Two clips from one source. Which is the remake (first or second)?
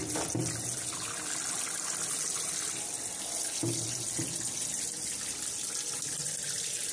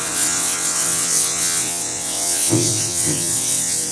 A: second